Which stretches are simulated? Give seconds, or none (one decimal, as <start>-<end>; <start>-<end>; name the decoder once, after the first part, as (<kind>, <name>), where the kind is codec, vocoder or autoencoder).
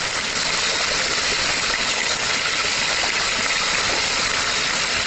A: 1.8-2.5 (codec, HILCodec)